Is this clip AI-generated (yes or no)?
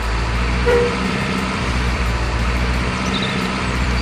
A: yes